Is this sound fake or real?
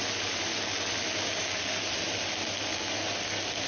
real